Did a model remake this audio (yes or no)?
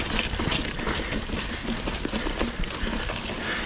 no